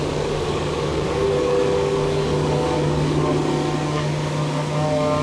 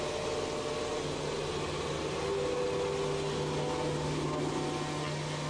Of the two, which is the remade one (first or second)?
first